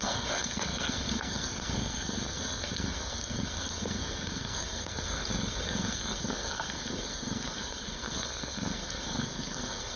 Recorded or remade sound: remade